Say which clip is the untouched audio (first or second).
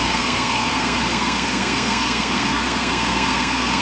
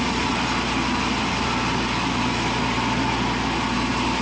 second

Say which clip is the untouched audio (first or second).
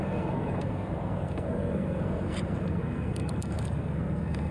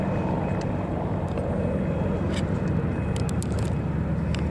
second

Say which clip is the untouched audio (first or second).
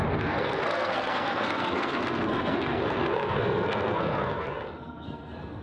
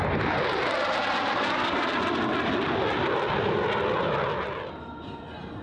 second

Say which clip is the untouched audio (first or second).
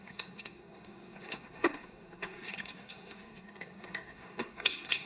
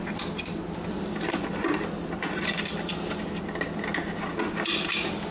second